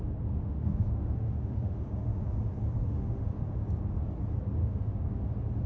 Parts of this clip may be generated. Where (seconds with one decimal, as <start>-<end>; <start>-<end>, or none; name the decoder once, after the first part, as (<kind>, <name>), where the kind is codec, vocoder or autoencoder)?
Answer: 0.4-2.3 (autoencoder, DAC-VAE); 2.8-3.4; 4.6-5.2